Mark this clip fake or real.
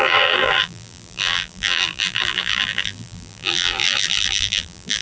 fake